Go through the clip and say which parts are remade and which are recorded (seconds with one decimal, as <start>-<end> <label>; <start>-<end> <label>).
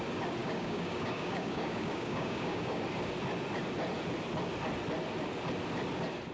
0.0-0.4 recorded; 0.4-2.8 remade; 2.8-6.3 recorded